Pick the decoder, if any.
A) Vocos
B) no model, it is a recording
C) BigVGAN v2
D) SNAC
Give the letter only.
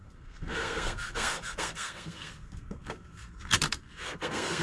D